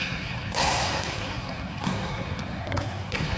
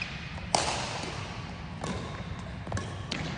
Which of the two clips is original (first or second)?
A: second